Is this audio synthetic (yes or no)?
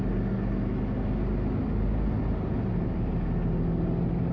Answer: no